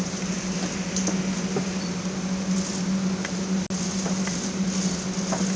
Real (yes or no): yes